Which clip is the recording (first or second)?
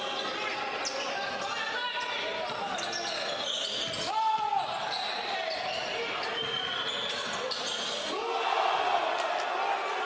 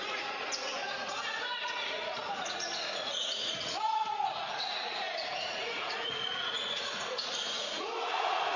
first